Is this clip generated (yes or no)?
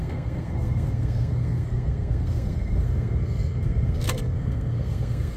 yes